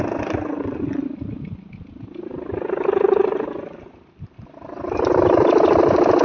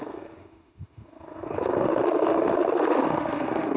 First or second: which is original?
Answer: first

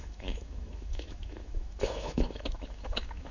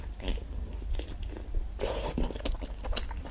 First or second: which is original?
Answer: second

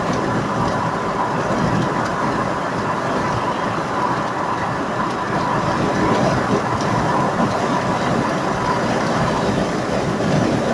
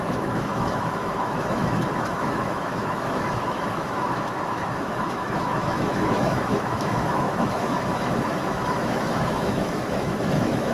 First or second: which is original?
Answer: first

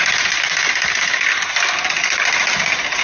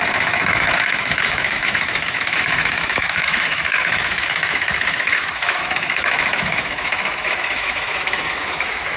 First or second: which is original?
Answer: first